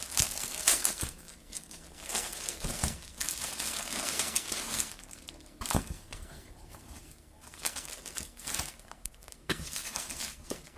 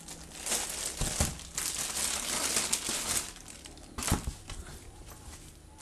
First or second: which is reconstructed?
first